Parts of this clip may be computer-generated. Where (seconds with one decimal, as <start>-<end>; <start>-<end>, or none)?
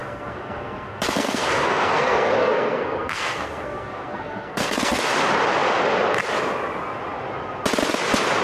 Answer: 0.0-5.0